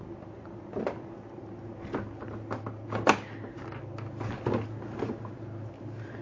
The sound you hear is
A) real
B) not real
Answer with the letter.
A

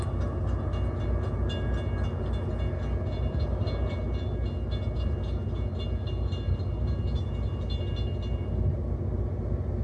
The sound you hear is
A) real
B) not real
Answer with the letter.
A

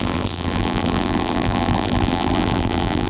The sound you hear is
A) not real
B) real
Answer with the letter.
A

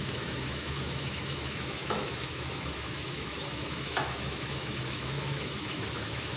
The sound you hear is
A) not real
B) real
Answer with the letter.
A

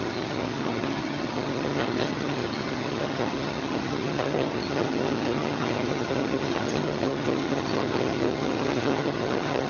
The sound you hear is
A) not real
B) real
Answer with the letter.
A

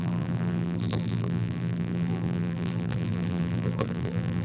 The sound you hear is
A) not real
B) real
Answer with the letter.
A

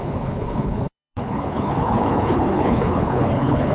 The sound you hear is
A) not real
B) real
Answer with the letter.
A